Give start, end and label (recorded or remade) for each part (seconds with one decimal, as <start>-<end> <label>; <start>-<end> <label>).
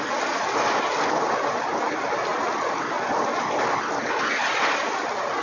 0.0-5.4 recorded